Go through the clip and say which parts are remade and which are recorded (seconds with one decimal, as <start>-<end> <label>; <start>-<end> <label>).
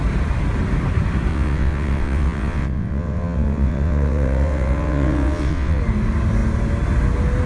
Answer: 0.0-1.3 recorded; 1.3-5.8 remade; 5.8-7.5 recorded